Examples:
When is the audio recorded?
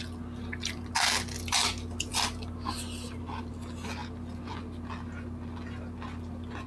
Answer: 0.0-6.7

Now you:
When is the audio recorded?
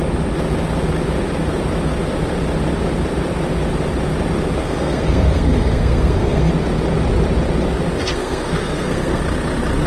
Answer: 0.0-4.6; 6.5-8.0; 9.2-9.9